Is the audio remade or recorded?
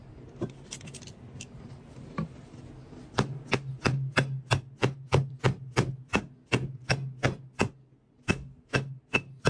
recorded